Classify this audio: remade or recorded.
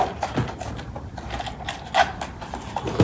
recorded